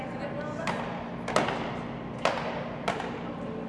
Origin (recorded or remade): recorded